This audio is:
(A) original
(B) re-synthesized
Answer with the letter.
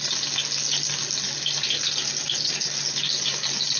A